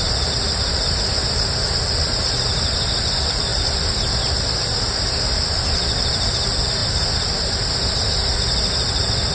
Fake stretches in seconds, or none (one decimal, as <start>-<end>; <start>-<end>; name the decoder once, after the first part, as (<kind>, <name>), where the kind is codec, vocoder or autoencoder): none